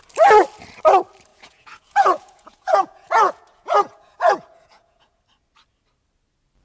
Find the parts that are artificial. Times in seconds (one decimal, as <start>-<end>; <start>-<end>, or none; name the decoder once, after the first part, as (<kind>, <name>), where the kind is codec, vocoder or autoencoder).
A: 1.3-5.2 (vocoder, Vocos)